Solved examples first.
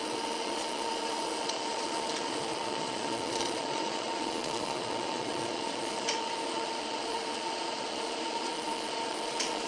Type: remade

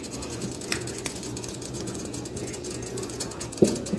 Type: remade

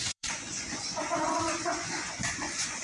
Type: remade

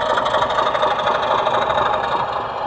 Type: recorded